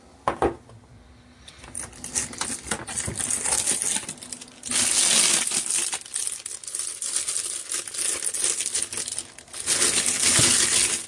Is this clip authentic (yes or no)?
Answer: yes